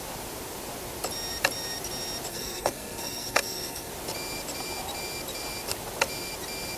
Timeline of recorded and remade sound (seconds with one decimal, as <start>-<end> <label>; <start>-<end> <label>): 0.0-2.3 recorded; 2.3-3.9 remade; 3.9-6.8 recorded